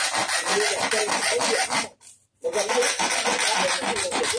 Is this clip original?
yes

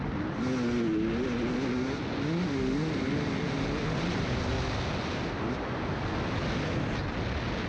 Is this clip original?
yes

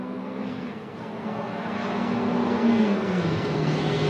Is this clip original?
no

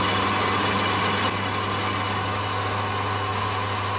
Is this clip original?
yes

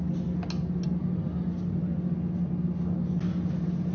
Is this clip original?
yes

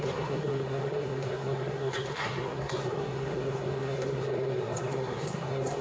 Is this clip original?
no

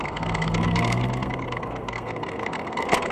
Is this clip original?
no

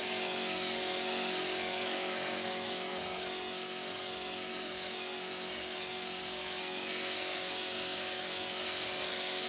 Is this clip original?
no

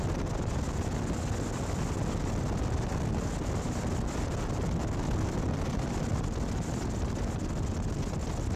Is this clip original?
yes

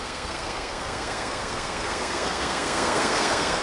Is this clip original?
no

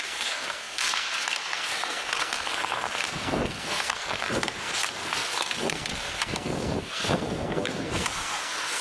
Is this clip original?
no